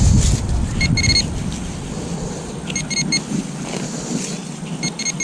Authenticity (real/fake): real